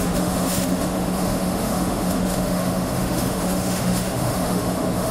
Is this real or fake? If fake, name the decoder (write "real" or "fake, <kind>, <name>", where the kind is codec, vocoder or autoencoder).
fake, autoencoder, DAC-VAE